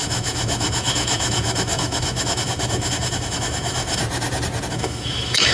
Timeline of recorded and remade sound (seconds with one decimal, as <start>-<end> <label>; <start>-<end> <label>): 0.0-4.0 remade; 4.0-4.7 recorded; 4.7-5.5 remade